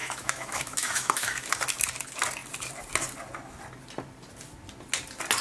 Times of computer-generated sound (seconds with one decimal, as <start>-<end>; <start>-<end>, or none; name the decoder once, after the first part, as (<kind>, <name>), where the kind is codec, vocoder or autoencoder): 0.0-1.5 (autoencoder, DAC-VAE)